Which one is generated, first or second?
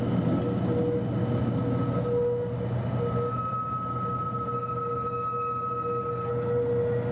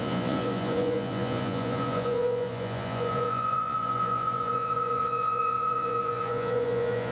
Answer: second